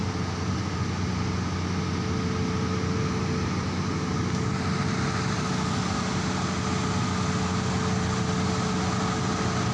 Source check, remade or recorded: recorded